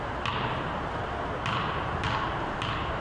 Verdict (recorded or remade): recorded